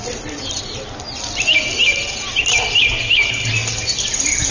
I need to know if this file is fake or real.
real